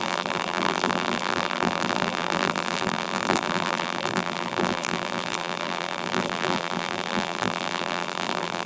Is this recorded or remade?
remade